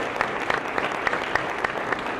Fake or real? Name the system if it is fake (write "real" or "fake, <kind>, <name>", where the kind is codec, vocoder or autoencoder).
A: real